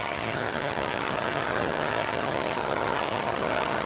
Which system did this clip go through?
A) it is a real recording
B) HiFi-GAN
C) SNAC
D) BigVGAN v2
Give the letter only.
B